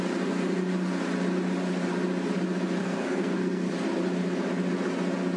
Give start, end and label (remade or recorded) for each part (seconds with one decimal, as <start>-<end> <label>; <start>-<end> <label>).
0.0-2.8 recorded; 2.8-3.7 remade; 3.7-5.4 recorded